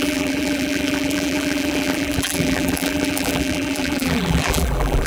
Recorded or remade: remade